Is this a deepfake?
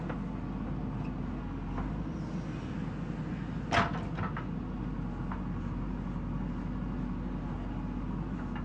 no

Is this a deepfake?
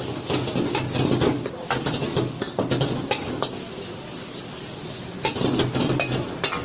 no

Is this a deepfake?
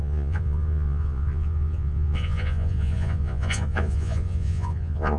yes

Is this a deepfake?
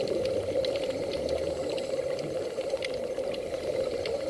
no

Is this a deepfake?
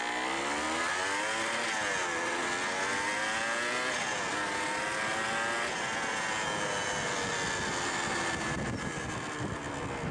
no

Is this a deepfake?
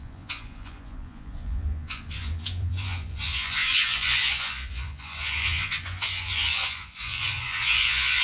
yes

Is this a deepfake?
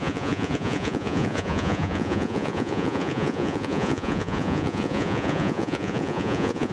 yes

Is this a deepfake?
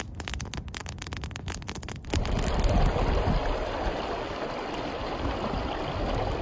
no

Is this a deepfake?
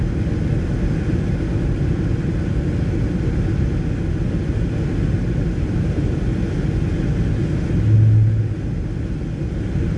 no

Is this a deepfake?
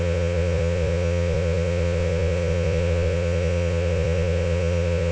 yes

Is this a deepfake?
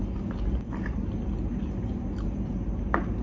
no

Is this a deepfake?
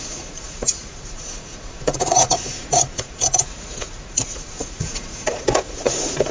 yes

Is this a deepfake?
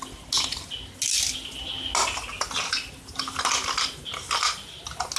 no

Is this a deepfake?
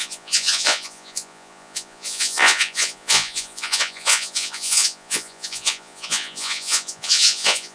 yes